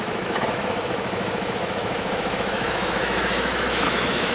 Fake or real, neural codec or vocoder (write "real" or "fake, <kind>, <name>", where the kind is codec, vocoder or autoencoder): fake, autoencoder, DAC-VAE